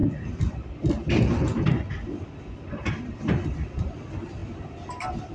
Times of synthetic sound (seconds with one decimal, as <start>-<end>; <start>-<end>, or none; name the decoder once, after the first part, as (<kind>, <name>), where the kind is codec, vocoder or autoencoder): none